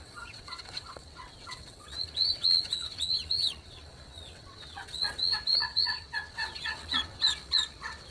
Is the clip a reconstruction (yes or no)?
yes